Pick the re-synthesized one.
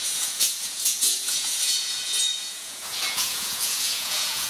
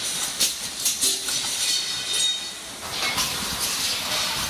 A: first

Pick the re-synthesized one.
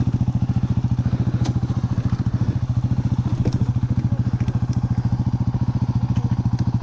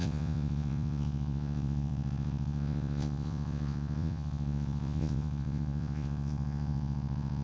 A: second